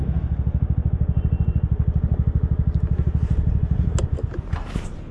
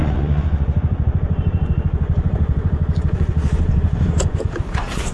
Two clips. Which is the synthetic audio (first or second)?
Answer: second